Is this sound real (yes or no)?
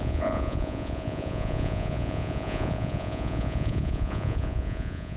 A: no